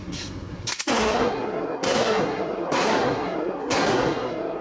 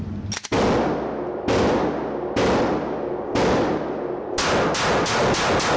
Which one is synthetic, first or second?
first